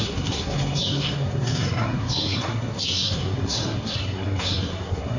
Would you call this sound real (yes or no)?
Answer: no